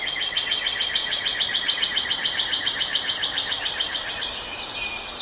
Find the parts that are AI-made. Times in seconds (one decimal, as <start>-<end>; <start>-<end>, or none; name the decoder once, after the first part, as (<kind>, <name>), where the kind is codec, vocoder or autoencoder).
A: 1.0-4.1 (vocoder, BigVGAN v2)